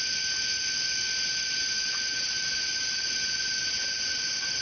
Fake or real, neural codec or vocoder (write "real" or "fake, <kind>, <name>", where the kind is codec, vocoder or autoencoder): real